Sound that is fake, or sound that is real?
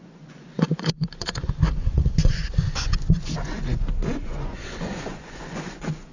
fake